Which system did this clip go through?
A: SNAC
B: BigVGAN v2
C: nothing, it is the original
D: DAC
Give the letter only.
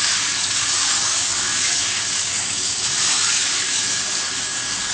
D